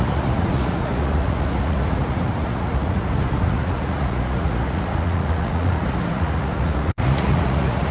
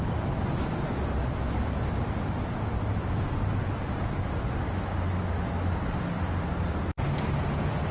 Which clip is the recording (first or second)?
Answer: second